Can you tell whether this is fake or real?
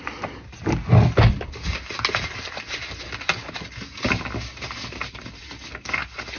real